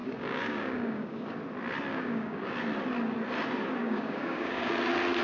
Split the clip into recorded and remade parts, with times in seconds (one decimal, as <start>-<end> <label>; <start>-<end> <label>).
0.0-1.3 remade; 1.3-1.9 recorded; 1.9-2.5 remade; 2.5-3.8 recorded; 3.8-4.7 remade; 4.7-5.2 recorded